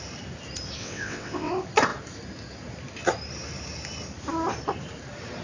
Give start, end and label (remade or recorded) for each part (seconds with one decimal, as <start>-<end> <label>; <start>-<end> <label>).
0.0-0.8 recorded; 0.8-1.5 remade; 1.5-5.4 recorded